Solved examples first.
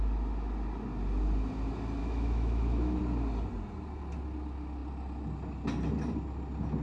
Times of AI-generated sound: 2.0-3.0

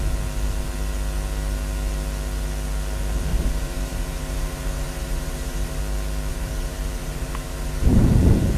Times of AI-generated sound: 3.3-5.8; 6.3-8.2